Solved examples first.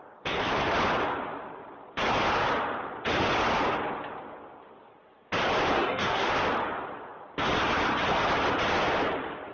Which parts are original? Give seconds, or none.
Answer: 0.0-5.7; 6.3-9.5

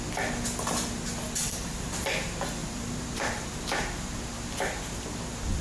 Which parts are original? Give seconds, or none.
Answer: 0.0-1.5; 2.1-2.6; 5.0-5.6

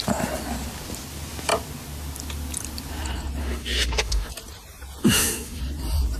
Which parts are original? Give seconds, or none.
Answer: 0.0-3.4; 4.3-5.0; 5.6-6.2

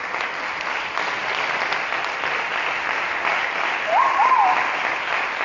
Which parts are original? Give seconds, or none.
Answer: 0.0-5.4